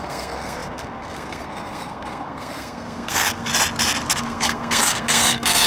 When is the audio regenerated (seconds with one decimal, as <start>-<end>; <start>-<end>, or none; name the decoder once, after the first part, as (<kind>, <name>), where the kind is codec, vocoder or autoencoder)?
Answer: 0.0-3.5 (codec, SNAC); 4.2-5.7